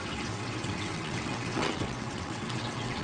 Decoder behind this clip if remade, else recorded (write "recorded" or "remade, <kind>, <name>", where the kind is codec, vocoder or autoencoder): remade, vocoder, WaveNeXt